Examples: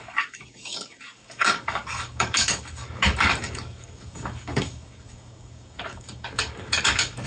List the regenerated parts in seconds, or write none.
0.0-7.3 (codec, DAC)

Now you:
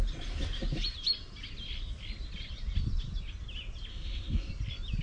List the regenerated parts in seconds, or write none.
3.9-4.5 (autoencoder, DAC-VAE)

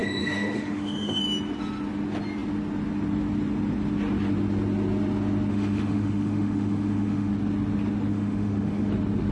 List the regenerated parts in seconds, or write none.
0.0-1.2 (autoencoder, DAC-VAE); 5.5-7.3; 8.1-8.9

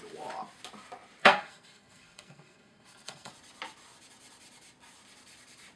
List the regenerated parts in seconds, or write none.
1.2-3.3 (codec, SNAC)

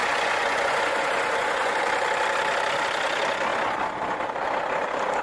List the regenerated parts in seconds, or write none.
0.0-1.8 (vocoder, Vocos)

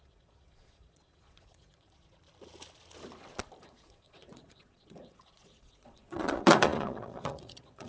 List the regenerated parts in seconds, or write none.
0.0-2.2 (vocoder, Vocos); 3.6-7.9